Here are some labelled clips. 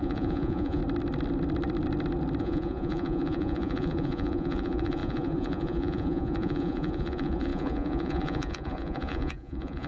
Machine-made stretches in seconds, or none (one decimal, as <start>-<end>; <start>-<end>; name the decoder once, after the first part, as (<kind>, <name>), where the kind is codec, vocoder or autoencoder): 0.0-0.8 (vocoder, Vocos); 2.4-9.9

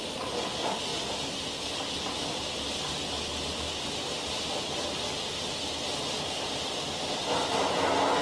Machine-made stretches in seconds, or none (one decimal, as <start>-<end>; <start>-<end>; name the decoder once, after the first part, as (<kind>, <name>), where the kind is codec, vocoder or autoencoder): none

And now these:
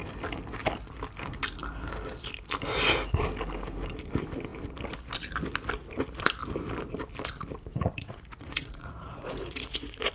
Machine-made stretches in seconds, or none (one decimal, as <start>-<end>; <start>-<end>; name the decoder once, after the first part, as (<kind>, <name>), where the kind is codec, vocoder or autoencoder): 7.7-10.1 (vocoder, Vocos)